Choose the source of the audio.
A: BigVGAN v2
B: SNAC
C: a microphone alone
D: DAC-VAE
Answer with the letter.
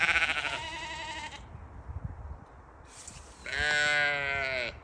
C